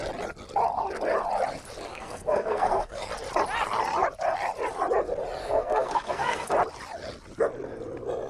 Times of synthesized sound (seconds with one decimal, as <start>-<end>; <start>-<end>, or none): 1.9-3.1; 5.4-6.5